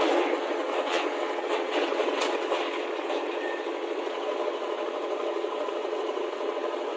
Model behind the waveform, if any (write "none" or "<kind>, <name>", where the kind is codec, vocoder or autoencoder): vocoder, WaveNeXt